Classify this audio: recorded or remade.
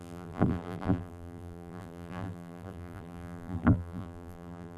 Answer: remade